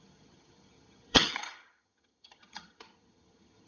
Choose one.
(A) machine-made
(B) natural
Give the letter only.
A